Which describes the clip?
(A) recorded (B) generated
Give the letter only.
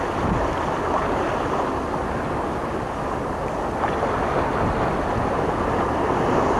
A